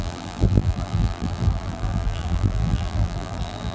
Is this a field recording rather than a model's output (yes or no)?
no